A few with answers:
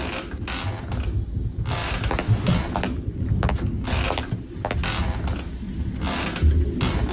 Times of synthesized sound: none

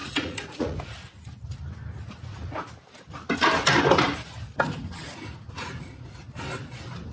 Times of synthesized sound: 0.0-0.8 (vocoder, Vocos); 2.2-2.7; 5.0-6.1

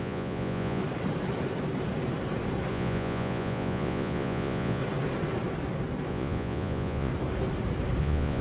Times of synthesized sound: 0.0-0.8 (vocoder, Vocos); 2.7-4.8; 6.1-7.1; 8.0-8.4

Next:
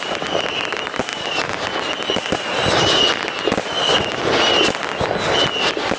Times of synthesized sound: none

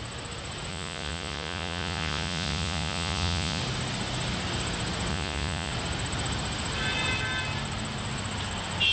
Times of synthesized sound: 0.7-3.6 (vocoder, Vocos); 5.1-5.7

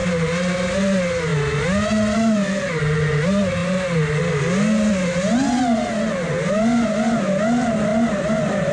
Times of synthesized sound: none

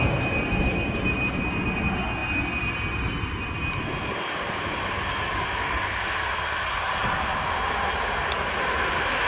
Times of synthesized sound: none